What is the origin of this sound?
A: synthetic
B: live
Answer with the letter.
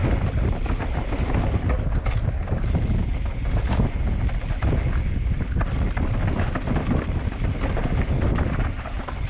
B